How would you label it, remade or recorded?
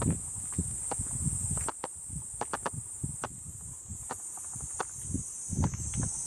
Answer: recorded